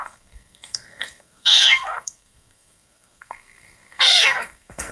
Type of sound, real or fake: fake